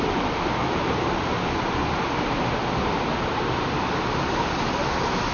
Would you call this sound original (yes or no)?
yes